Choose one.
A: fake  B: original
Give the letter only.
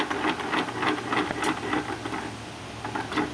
B